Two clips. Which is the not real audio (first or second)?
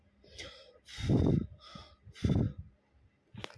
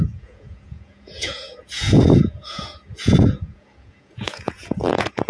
second